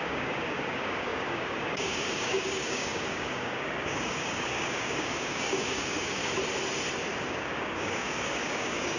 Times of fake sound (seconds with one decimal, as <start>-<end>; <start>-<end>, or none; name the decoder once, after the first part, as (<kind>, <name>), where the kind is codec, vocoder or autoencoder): 0.0-6.2 (codec, DAC); 7.3-9.0